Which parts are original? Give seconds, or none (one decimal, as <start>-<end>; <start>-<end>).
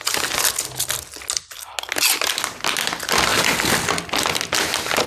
0.0-5.1